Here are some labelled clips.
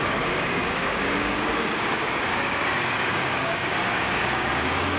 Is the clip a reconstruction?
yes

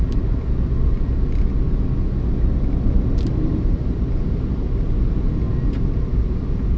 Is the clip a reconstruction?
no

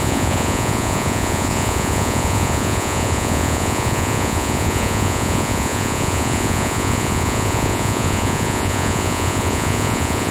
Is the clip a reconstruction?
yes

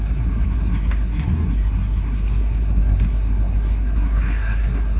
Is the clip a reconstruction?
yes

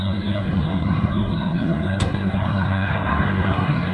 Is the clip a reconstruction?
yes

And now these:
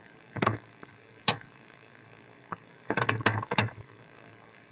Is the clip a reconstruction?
yes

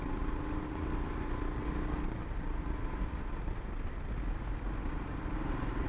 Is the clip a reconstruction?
no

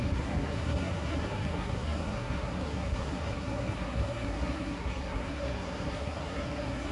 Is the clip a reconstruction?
yes